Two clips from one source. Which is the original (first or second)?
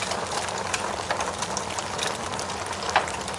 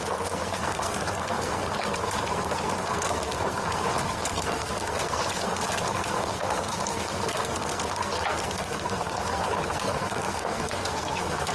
first